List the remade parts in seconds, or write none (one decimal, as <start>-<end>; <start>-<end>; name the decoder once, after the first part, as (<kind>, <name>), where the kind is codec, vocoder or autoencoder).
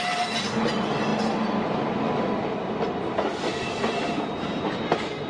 none